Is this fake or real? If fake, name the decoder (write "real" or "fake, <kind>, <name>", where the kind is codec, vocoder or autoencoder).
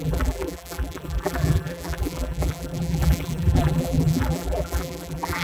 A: fake, vocoder, BigVGAN v2